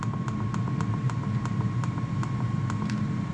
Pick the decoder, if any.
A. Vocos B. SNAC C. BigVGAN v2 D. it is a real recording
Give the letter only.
D